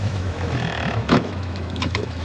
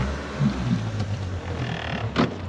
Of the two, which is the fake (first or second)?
first